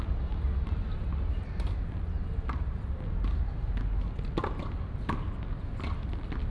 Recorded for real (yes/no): yes